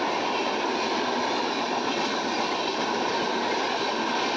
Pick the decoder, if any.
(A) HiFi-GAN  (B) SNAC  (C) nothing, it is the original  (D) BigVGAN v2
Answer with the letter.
C